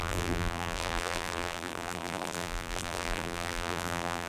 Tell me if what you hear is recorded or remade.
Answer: remade